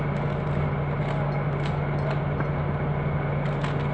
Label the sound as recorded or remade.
recorded